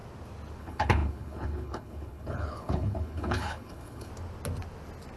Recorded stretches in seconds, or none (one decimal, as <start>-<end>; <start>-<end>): 0.0-0.6; 4.1-5.2

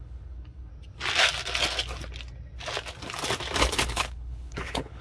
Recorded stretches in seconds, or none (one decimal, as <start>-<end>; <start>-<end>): 0.7-3.7

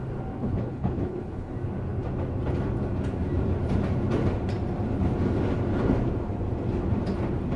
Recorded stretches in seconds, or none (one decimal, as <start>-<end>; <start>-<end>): 0.0-0.4; 1.5-7.6

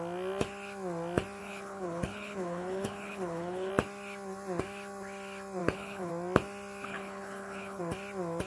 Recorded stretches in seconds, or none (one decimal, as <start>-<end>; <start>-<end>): 0.0-1.4; 3.7-5.6; 6.1-6.9; 7.8-8.5

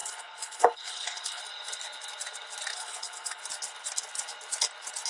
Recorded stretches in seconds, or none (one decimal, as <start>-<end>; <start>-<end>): 1.4-2.7; 3.4-5.1